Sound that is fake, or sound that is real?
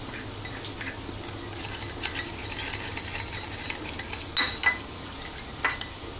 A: real